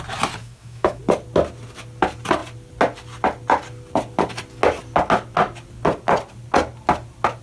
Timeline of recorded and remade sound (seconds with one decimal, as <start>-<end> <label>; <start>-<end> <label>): 0.0-0.4 recorded; 0.4-1.0 remade; 1.0-7.4 recorded